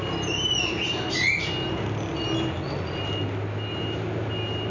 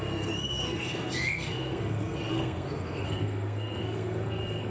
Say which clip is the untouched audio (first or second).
first